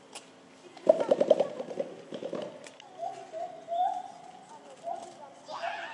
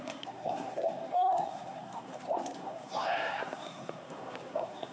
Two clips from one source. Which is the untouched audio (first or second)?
first